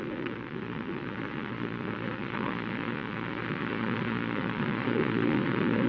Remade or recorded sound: remade